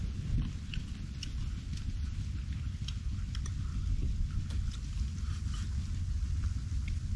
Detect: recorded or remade recorded